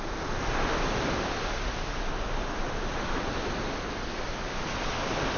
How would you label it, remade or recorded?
recorded